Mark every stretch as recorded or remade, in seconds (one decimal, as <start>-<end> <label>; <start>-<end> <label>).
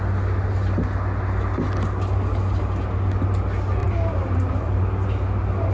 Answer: 0.0-3.8 recorded; 3.8-4.8 remade; 4.8-5.7 recorded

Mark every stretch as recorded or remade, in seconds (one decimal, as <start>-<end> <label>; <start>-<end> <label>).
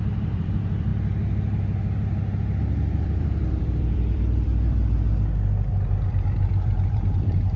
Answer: 0.0-0.9 remade; 0.9-2.6 recorded; 2.6-4.8 remade; 4.8-6.1 recorded; 6.1-7.6 remade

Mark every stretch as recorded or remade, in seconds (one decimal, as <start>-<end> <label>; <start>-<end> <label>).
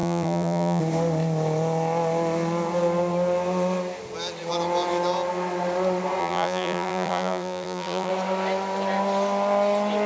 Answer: 0.0-0.8 remade; 0.8-6.2 recorded; 6.2-8.1 remade; 8.1-10.1 recorded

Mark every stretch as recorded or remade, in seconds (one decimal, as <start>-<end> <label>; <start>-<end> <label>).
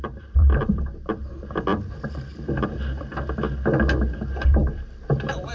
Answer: 0.0-2.3 remade; 2.3-4.0 recorded; 4.0-5.5 remade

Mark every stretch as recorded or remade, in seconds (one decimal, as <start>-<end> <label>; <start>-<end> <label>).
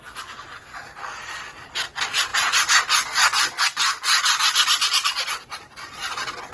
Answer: 0.0-6.5 recorded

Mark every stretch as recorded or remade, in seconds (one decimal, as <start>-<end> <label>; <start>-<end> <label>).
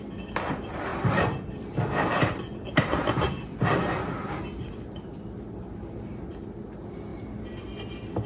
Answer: 0.0-0.9 recorded; 0.9-4.7 remade; 4.7-8.3 recorded